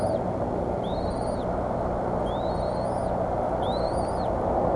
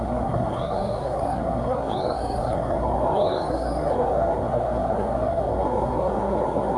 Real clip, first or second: first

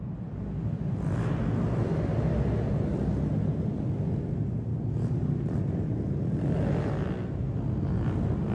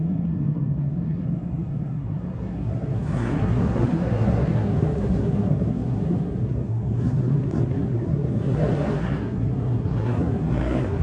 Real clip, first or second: first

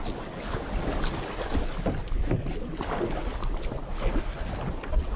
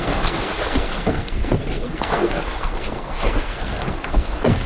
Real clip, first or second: first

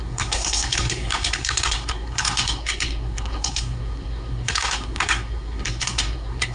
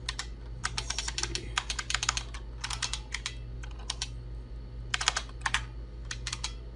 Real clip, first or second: second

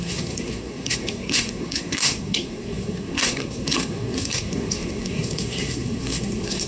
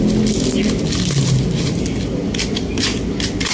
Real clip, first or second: second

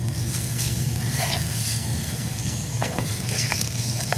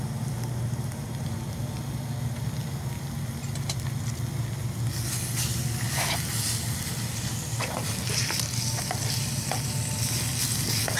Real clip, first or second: second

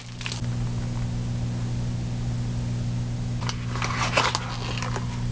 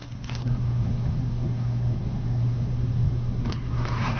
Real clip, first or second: first